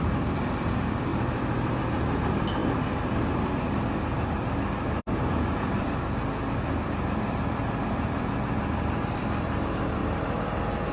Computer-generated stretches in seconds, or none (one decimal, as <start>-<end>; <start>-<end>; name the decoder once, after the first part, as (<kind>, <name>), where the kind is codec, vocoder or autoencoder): 0.0-2.6 (vocoder, BigVGAN v2); 5.1-10.0